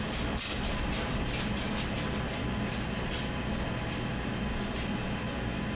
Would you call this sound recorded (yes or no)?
yes